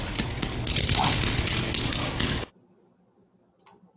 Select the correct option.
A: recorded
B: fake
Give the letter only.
A